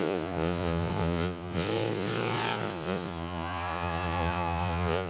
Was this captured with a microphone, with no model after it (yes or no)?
no